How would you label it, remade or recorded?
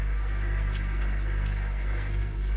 remade